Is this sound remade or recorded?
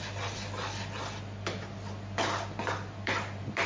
recorded